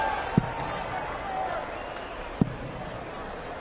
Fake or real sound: real